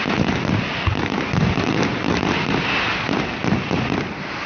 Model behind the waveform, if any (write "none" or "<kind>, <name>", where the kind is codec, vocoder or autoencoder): vocoder, BigVGAN v2